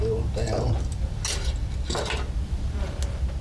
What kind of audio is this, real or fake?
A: real